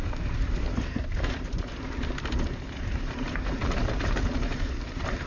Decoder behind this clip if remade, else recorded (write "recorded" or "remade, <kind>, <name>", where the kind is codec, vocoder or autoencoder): remade, vocoder, BigVGAN v2